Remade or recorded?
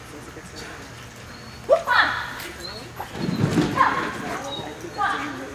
recorded